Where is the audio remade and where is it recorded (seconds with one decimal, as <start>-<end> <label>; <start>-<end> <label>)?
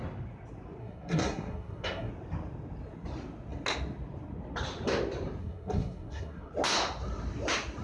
0.0-0.8 recorded; 0.8-2.1 remade; 2.1-5.4 recorded; 5.4-6.5 remade; 6.5-7.8 recorded